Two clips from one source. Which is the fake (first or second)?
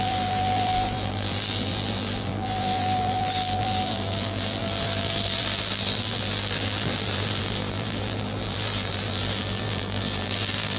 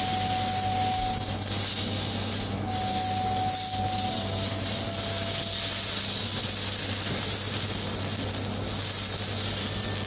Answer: first